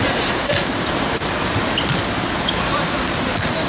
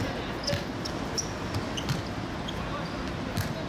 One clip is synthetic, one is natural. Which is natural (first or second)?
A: second